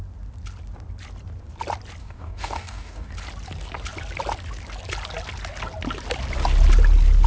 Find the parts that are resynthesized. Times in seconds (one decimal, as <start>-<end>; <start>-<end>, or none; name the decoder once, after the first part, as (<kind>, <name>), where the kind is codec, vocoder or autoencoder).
2.0-3.1 (codec, DAC)